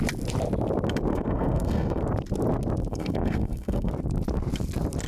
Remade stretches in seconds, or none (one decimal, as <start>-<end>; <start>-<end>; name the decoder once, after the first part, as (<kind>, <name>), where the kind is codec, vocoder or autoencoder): 1.1-2.0 (codec, SNAC); 2.9-3.9